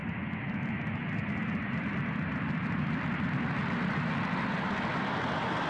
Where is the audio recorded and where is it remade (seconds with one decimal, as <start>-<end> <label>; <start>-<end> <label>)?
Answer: 0.0-1.0 recorded; 1.0-1.9 remade; 1.9-4.9 recorded; 4.9-5.7 remade